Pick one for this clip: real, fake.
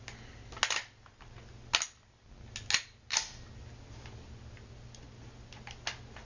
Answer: real